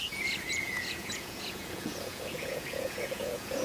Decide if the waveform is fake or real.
fake